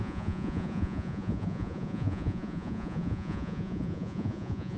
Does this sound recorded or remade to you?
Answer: remade